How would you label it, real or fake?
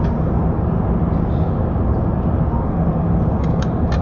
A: real